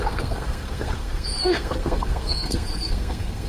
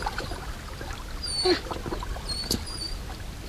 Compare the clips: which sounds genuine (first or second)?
second